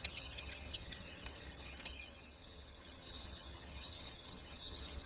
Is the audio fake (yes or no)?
yes